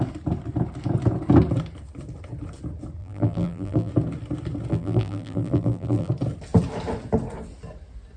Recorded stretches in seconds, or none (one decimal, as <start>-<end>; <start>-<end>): 0.0-3.0; 3.9-4.7; 6.1-8.2